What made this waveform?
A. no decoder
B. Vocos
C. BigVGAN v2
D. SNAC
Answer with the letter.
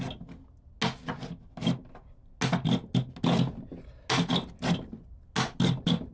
A